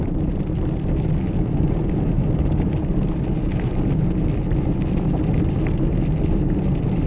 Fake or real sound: real